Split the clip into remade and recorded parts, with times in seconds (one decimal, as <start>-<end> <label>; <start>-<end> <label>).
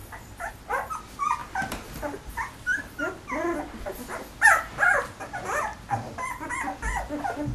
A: 0.0-0.5 remade; 0.5-1.4 recorded; 1.4-2.9 remade; 2.9-5.7 recorded; 5.7-6.5 remade; 6.5-7.5 recorded